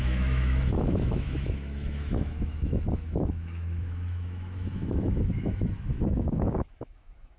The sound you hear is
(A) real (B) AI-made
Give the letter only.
B